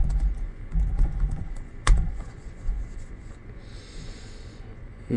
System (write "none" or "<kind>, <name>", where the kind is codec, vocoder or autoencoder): vocoder, Vocos